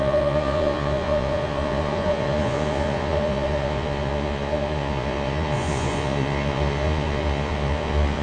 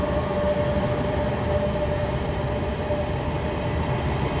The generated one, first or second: first